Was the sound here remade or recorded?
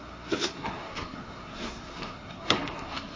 remade